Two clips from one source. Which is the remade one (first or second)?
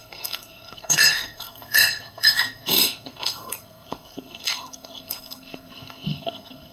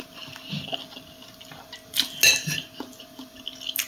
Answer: first